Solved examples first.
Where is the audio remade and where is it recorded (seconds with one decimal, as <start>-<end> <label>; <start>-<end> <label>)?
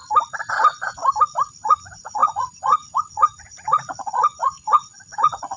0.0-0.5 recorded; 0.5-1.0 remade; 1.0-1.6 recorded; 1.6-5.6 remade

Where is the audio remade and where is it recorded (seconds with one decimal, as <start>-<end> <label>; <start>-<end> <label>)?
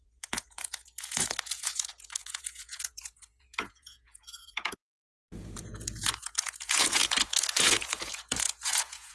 0.0-9.1 remade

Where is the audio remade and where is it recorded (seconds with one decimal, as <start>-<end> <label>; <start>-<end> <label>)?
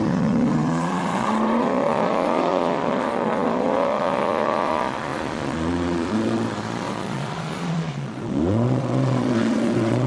0.0-10.1 remade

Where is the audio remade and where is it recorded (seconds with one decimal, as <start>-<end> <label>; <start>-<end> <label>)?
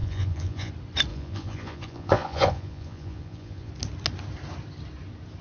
0.0-0.7 remade; 0.7-1.1 recorded; 1.1-3.7 remade; 3.7-5.4 recorded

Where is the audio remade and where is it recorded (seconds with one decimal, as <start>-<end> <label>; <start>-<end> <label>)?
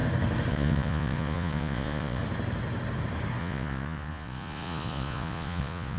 0.0-0.5 recorded; 0.5-2.2 remade; 2.2-3.4 recorded; 3.4-6.0 remade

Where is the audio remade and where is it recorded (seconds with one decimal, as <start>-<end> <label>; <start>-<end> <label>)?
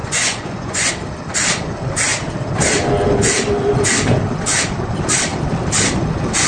0.0-0.9 remade; 0.9-6.5 recorded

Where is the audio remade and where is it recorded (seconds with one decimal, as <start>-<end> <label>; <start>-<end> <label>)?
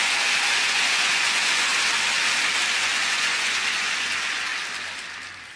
0.0-1.7 remade; 1.7-2.7 recorded; 2.7-4.5 remade; 4.5-5.6 recorded